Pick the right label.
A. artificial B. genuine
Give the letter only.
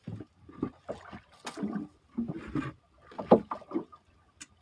B